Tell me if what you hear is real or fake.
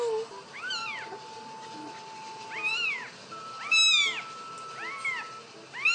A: real